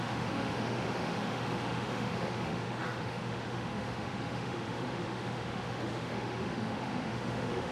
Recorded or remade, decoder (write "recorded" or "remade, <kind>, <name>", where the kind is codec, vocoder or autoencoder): remade, autoencoder, DAC-VAE